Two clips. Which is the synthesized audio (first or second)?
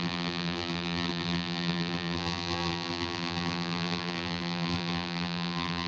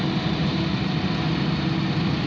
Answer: first